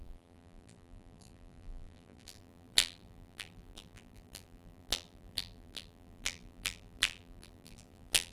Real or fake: fake